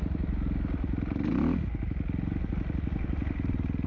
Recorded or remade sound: recorded